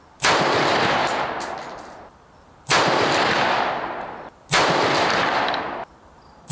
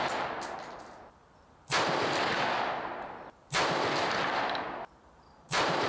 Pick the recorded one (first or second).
second